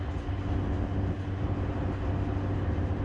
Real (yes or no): yes